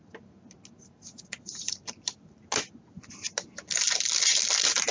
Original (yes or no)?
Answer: yes